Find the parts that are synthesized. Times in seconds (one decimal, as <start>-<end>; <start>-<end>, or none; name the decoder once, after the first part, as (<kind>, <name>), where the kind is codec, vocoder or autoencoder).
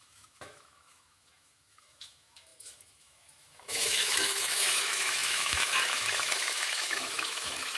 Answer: 0.0-7.8 (autoencoder, DAC-VAE)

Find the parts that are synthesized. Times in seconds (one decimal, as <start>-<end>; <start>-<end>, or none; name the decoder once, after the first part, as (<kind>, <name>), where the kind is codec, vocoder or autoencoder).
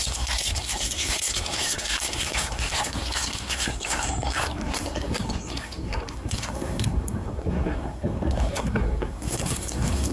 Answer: 0.0-10.1 (codec, SNAC)